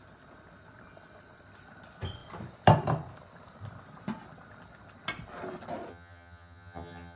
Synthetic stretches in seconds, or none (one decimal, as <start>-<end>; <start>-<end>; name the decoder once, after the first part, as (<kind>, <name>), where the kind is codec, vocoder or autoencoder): 5.9-7.2 (vocoder, HiFi-GAN)